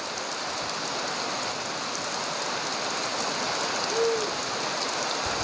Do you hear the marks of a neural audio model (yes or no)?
no